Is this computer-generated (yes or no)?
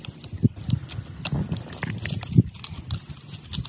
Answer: no